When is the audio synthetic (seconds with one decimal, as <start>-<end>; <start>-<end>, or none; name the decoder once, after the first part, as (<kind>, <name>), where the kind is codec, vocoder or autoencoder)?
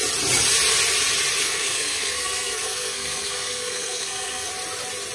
1.4-4.5 (codec, SNAC)